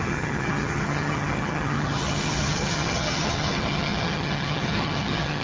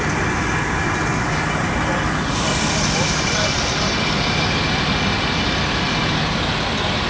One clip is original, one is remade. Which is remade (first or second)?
first